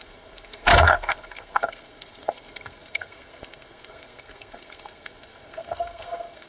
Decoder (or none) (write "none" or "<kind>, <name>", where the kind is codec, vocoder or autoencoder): codec, SNAC